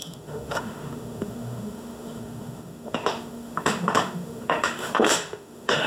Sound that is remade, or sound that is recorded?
remade